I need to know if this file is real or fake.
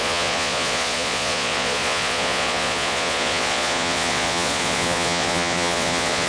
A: fake